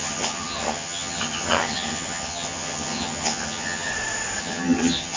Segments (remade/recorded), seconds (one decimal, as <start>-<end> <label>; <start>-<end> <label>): 0.0-3.9 remade; 3.9-4.4 recorded; 4.4-5.2 remade